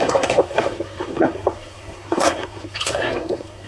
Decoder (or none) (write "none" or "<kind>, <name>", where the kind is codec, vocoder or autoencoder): codec, SNAC